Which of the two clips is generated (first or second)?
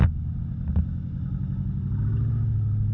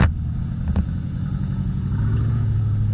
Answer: second